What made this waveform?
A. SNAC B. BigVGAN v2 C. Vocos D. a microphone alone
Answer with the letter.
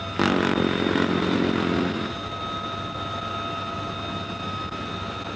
D